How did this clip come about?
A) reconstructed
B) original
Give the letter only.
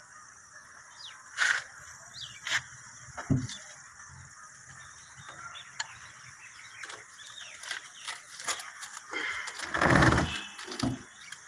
B